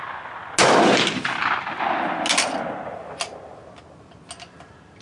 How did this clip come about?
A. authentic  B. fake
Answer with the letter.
A